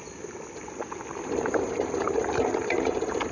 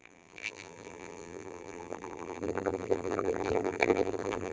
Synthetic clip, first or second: second